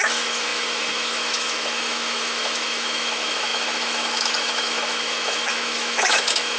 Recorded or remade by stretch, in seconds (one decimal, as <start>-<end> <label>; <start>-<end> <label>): 0.0-6.6 remade